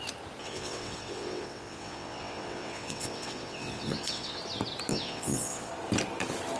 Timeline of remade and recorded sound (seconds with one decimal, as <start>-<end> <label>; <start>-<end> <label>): 0.0-0.4 recorded; 0.4-4.4 remade; 4.4-4.9 recorded; 4.9-5.7 remade; 5.7-6.6 recorded

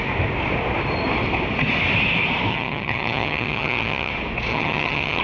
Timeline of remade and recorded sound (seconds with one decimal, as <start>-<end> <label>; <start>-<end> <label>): 0.0-2.5 recorded; 2.5-4.1 remade; 4.1-4.5 recorded; 4.5-5.2 remade